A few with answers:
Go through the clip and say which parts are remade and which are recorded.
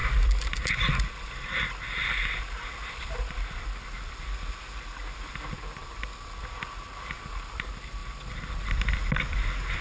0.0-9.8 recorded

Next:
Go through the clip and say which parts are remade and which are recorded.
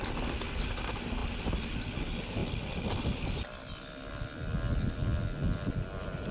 0.0-6.3 recorded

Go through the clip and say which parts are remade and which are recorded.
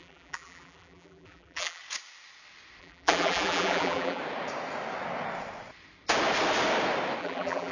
0.0-1.8 remade; 1.8-2.8 recorded; 2.8-4.2 remade; 4.2-7.2 recorded; 7.2-7.7 remade